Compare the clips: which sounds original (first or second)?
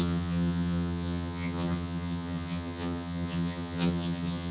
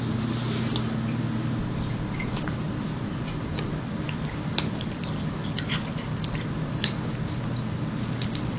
second